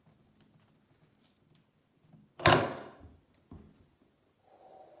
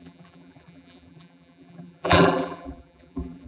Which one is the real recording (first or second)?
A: first